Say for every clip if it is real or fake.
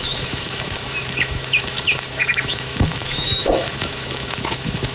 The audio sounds fake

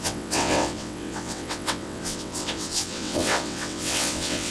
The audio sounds fake